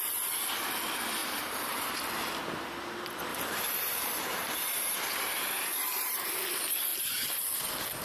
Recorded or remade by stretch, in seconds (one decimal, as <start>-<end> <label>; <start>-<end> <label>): 0.0-1.2 recorded; 1.2-1.9 remade; 1.9-3.3 recorded; 3.3-6.4 remade; 6.4-6.9 recorded; 6.9-7.4 remade; 7.4-8.0 recorded